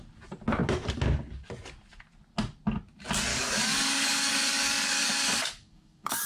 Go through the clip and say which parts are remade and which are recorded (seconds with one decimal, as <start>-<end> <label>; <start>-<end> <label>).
0.0-3.3 recorded; 3.3-6.3 remade

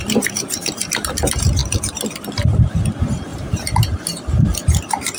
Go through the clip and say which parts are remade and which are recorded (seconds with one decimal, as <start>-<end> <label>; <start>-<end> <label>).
0.0-1.2 remade; 1.2-3.3 recorded; 3.3-5.2 remade

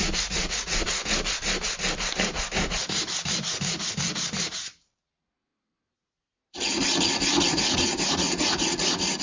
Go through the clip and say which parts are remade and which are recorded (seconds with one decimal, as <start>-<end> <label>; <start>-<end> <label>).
0.0-1.0 remade; 1.0-5.0 recorded; 5.0-5.5 remade; 5.5-7.5 recorded; 7.5-9.2 remade

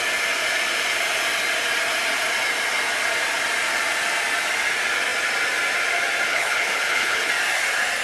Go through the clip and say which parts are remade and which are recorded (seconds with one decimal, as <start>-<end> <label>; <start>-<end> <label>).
0.0-6.3 recorded; 6.3-7.3 remade; 7.3-8.0 recorded

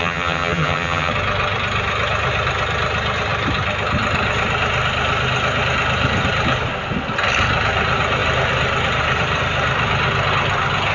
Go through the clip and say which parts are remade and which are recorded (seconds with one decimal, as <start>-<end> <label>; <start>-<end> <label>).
0.0-1.1 remade; 1.1-10.9 recorded

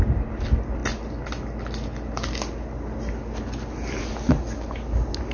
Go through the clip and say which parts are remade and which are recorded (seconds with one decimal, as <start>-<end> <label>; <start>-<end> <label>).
0.0-5.3 recorded

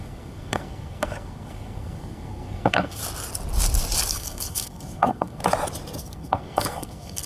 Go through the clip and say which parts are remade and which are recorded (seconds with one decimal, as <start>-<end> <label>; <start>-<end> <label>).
0.0-3.0 remade; 3.0-4.1 recorded; 4.1-5.4 remade; 5.4-6.0 recorded; 6.0-7.3 remade